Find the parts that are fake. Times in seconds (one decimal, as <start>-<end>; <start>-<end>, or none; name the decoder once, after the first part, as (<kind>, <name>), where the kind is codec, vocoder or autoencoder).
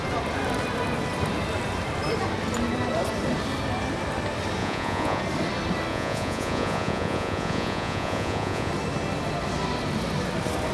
4.6-5.2 (vocoder, Vocos); 5.9-8.7